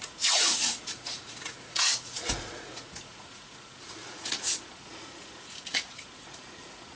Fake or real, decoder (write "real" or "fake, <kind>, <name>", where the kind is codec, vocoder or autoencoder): fake, vocoder, Vocos